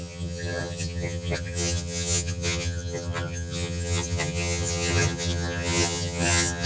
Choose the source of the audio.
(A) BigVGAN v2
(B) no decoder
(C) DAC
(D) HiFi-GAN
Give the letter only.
D